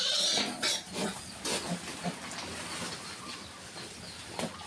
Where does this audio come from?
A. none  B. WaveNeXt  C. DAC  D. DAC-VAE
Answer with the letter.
A